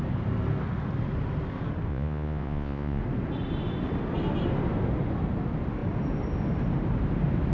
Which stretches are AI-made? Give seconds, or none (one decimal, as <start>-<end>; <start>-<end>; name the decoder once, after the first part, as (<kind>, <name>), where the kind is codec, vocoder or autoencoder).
1.9-3.0 (vocoder, Vocos)